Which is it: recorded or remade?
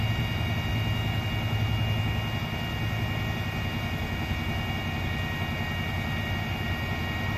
recorded